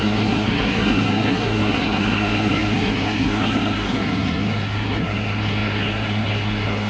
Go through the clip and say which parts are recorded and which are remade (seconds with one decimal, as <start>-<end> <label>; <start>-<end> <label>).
0.0-6.9 remade